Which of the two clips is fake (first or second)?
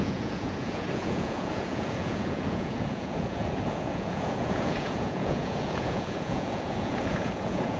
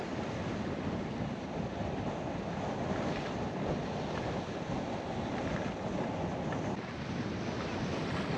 first